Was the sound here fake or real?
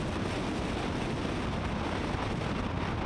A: real